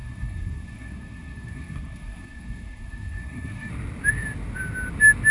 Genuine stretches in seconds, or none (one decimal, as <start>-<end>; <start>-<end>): 3.7-5.3